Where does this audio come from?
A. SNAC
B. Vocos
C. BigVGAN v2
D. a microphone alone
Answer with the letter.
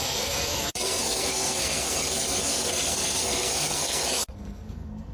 A